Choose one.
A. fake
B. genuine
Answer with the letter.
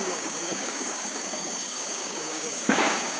A